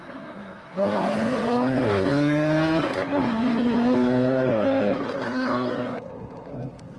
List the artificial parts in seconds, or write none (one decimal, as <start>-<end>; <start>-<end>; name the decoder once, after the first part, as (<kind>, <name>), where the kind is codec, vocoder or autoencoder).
0.0-7.0 (codec, SNAC)